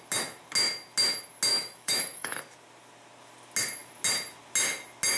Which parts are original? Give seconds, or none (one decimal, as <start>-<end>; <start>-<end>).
0.0-1.5; 2.4-5.2